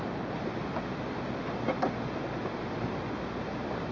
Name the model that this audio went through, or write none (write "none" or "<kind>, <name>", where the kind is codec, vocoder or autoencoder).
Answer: none